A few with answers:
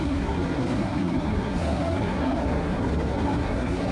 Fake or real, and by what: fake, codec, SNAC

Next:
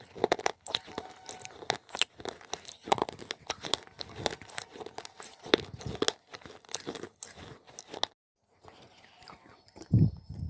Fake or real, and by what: real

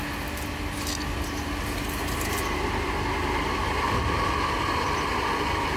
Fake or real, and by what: real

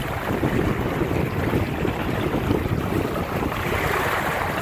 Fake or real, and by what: real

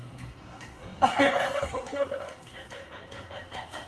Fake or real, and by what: fake, codec, SNAC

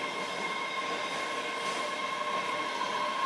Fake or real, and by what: real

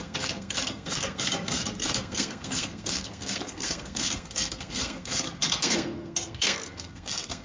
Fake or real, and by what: fake, codec, SNAC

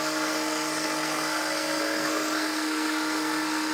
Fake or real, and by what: fake, codec, SNAC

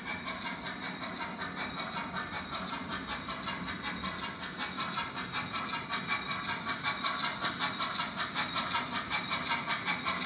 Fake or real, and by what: real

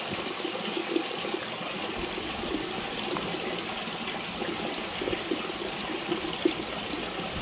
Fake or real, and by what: real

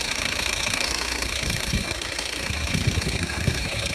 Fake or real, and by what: fake, codec, SNAC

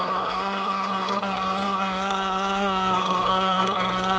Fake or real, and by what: fake, codec, SNAC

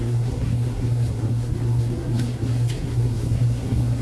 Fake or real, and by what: fake, codec, SNAC